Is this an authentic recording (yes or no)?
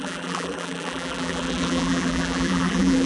no